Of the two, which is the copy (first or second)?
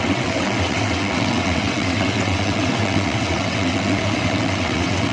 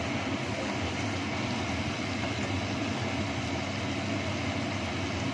first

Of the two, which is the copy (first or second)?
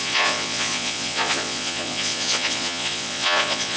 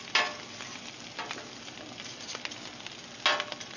first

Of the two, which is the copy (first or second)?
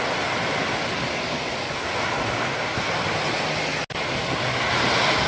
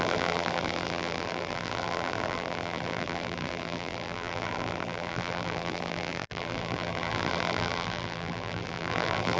second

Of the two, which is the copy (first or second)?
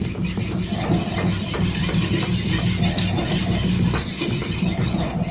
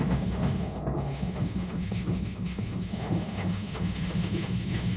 second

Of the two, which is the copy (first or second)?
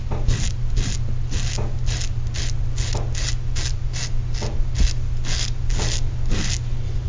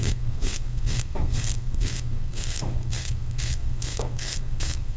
second